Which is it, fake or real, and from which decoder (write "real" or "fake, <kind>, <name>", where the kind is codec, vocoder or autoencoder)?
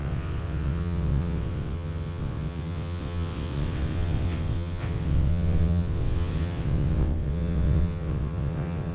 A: fake, vocoder, WaveNeXt